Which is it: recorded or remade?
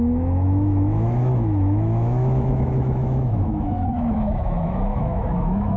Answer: remade